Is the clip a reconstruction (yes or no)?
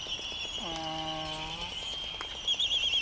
no